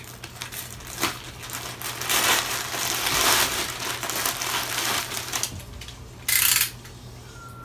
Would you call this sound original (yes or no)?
yes